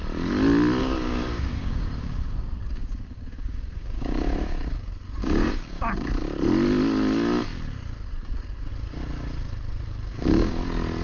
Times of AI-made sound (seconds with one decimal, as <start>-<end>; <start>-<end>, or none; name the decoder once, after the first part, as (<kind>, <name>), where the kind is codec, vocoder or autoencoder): 0.8-4.7 (codec, DAC); 5.2-6.2; 10.1-10.6